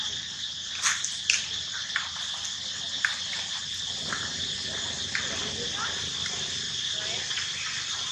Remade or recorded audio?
recorded